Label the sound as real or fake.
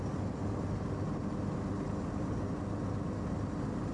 real